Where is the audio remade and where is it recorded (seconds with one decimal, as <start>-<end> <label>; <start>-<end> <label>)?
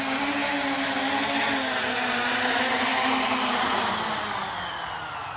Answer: 0.0-5.4 recorded